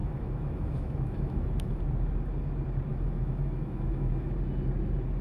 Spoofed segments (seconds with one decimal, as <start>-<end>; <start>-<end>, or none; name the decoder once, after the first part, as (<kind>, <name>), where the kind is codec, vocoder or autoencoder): 0.0-1.8 (autoencoder, DAC-VAE); 2.9-4.3